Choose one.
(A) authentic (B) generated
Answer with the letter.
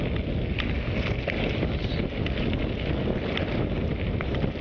A